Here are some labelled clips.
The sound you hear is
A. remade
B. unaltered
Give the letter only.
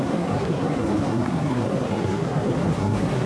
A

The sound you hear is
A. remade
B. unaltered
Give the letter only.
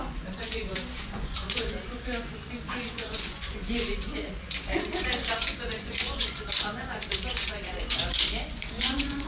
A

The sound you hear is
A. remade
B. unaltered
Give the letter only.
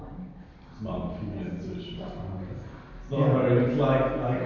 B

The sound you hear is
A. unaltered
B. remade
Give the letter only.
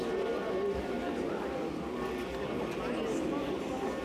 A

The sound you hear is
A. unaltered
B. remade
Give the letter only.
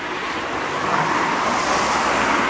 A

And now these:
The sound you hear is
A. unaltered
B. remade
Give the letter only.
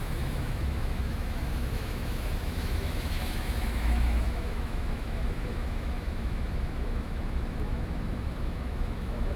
B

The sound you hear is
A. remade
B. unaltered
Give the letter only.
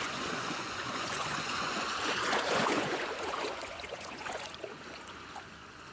A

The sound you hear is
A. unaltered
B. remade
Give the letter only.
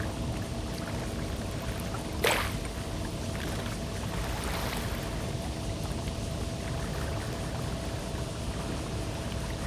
A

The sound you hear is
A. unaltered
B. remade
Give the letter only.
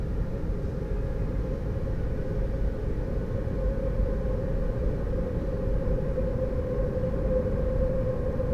A